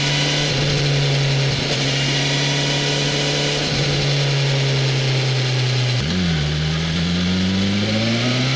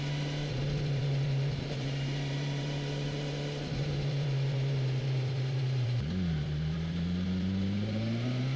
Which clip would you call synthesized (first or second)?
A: second